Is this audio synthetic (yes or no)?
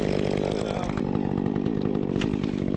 no